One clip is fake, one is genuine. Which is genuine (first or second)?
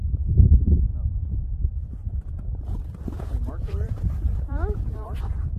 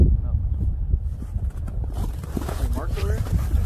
second